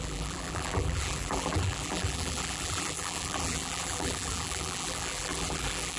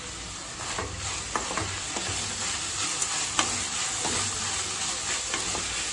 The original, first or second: second